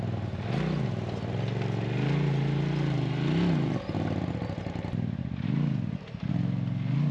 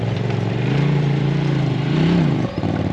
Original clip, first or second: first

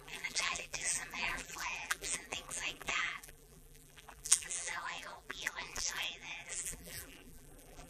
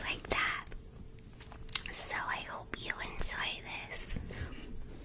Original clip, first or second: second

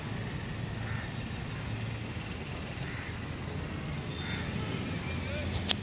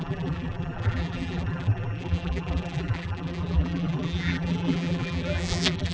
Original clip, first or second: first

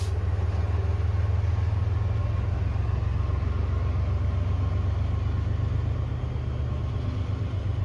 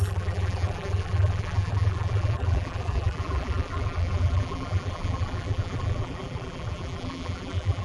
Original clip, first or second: first